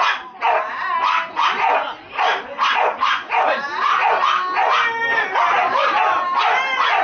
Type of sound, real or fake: real